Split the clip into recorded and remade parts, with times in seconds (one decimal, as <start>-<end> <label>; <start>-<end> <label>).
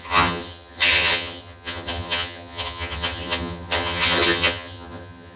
0.0-5.4 remade